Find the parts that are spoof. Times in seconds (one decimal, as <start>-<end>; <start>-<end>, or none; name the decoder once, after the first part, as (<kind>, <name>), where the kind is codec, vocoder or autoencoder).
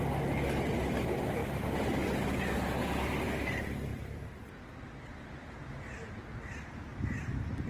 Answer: 1.4-2.4 (vocoder, BigVGAN v2); 3.9-5.1; 6.9-7.7